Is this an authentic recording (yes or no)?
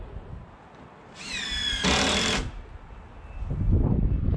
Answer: yes